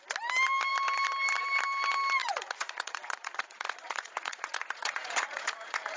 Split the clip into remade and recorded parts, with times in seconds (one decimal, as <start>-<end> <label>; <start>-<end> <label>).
0.0-2.2 recorded; 2.2-6.0 remade